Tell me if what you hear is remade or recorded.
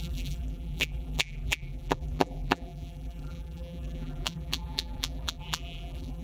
remade